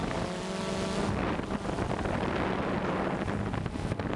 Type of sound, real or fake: real